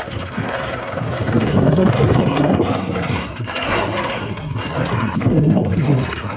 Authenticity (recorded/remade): remade